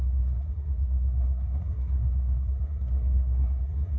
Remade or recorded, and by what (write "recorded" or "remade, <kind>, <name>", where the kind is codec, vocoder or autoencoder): remade, codec, SNAC